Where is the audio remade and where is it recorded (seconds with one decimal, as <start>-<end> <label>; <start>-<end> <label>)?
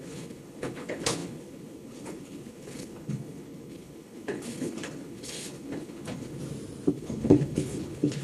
0.0-6.4 remade; 6.4-6.9 recorded; 6.9-8.2 remade